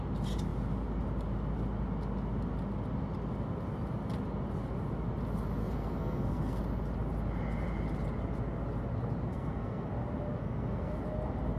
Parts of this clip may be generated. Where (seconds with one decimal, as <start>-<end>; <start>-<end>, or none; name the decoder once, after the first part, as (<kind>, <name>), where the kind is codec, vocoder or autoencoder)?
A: 5.6-6.6 (codec, SNAC); 9.3-9.9; 10.4-11.0